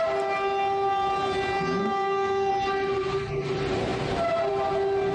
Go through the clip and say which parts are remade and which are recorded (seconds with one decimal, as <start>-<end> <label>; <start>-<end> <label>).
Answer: 0.0-1.8 recorded; 1.8-2.5 remade; 2.5-5.1 recorded

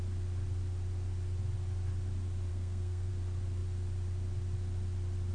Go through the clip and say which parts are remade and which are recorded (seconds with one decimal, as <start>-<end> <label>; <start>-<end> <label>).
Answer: 0.0-2.5 recorded; 2.5-3.1 remade; 3.1-5.3 recorded